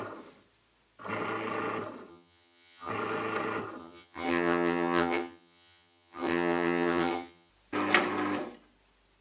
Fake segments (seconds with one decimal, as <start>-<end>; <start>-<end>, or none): 2.1-2.9; 3.8-7.5